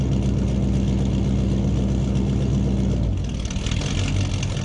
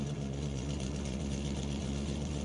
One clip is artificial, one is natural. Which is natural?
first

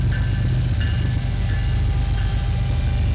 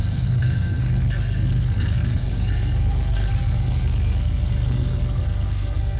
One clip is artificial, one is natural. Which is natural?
first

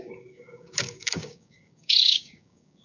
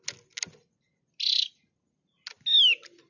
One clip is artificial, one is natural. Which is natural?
second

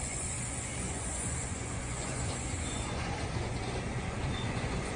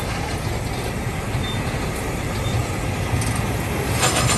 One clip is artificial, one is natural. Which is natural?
second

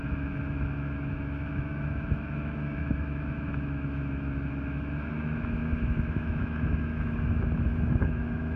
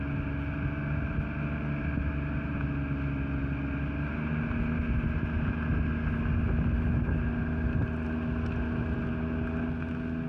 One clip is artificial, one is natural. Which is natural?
second